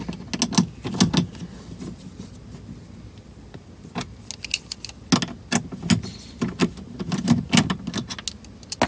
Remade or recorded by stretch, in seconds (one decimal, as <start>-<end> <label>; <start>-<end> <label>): 0.0-8.9 recorded

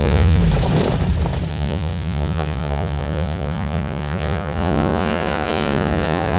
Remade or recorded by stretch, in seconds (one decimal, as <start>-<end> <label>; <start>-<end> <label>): 0.0-0.4 remade; 0.4-1.5 recorded; 1.5-6.4 remade

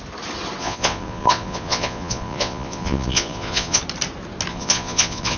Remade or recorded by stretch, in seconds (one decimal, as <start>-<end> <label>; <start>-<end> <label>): 0.0-0.6 recorded; 0.6-3.8 remade; 3.8-4.5 recorded; 4.5-5.4 remade